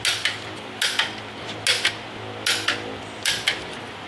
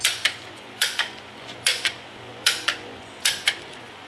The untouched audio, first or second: first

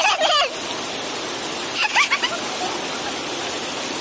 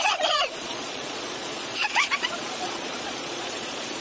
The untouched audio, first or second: first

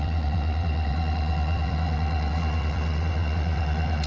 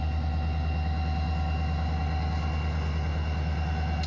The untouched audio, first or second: second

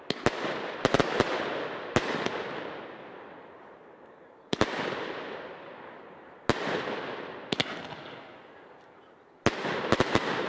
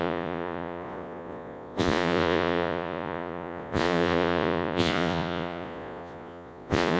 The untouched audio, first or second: first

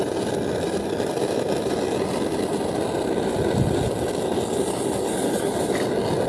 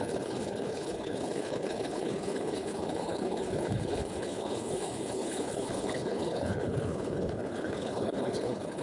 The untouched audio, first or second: first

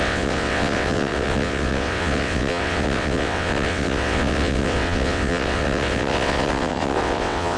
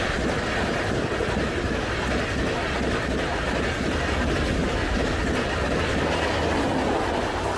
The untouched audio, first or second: second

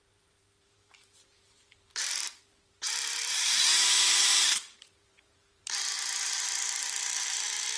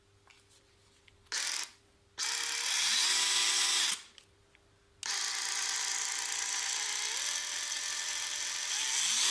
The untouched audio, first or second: second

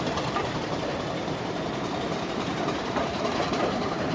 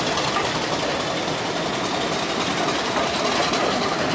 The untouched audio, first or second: second